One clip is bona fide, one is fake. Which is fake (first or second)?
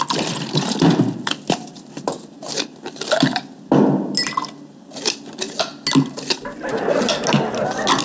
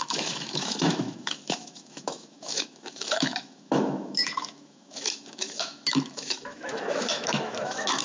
second